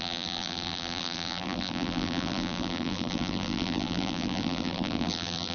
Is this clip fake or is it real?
fake